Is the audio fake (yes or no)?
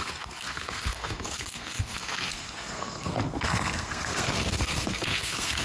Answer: yes